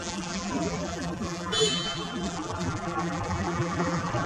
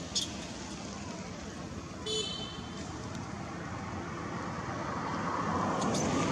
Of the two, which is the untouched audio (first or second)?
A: second